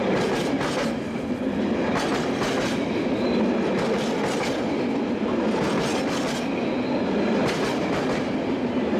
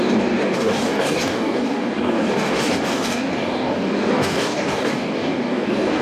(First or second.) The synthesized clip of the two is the second